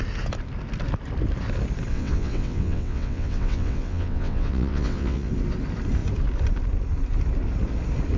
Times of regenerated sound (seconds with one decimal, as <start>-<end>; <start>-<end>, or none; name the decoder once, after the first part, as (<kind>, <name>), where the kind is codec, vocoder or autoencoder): 1.9-5.3 (vocoder, WaveNeXt)

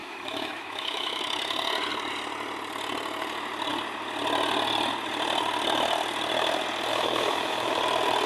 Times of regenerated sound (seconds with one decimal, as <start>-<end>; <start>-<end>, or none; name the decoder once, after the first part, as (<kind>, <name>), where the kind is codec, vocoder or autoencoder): 0.0-1.2 (autoencoder, DAC-VAE); 6.9-7.8

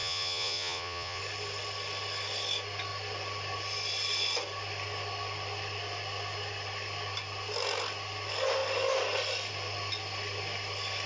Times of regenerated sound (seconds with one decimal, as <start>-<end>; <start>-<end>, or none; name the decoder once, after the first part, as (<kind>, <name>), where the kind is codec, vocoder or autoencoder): 0.0-1.2 (vocoder, Vocos)

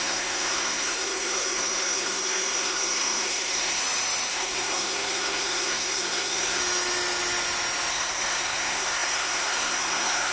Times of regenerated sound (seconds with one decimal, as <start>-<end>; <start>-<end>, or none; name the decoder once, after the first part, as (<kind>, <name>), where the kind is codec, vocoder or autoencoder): 0.0-3.8 (codec, SNAC); 4.3-6.6; 7.9-10.3